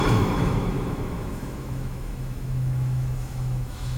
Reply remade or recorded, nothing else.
remade